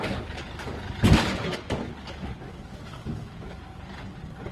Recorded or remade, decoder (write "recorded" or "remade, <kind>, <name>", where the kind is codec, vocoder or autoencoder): remade, codec, DAC